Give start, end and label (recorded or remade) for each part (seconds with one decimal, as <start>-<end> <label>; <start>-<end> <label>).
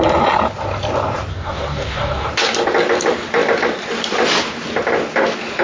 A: 0.0-1.3 recorded; 1.3-2.3 remade; 2.3-5.6 recorded